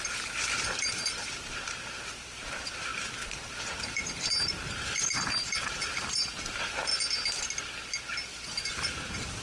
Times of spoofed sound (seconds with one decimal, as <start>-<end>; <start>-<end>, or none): 0.0-6.9; 8.6-9.4